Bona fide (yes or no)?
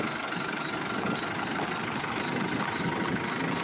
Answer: yes